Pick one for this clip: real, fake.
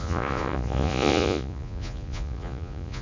fake